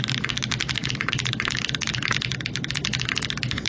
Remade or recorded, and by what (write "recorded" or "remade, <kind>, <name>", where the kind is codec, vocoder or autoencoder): recorded